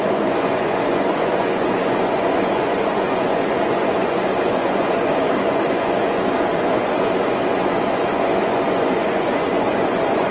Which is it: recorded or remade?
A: remade